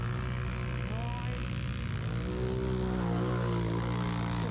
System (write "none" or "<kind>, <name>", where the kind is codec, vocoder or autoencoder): none